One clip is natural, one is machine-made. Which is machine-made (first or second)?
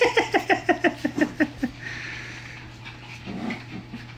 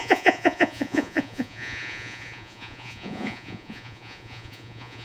second